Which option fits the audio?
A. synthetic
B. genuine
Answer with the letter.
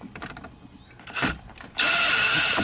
B